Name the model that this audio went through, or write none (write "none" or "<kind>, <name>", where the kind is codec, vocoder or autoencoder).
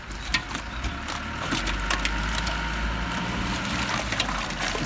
none